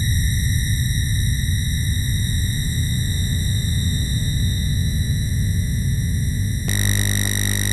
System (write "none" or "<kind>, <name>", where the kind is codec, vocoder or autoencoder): none